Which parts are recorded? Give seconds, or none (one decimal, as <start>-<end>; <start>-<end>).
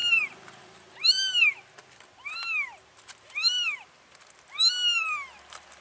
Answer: 0.0-5.8